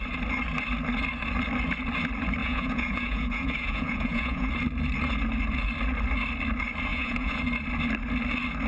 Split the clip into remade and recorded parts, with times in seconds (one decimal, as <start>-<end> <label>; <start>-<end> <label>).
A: 0.0-2.4 recorded; 2.4-4.5 remade; 4.5-6.9 recorded; 6.9-7.4 remade; 7.4-8.7 recorded